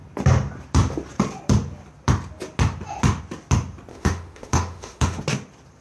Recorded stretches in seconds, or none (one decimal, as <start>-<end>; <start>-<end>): 0.0-3.9; 5.2-5.8